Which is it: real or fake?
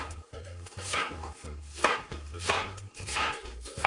fake